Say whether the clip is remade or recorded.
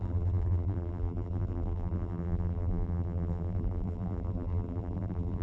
remade